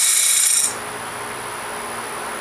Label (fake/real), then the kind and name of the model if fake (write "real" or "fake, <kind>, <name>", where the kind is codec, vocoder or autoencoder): real